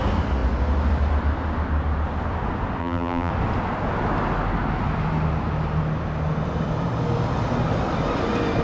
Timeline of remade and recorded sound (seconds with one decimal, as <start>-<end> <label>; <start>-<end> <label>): 0.0-2.8 recorded; 2.8-3.3 remade; 3.3-8.6 recorded